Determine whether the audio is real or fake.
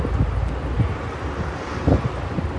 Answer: real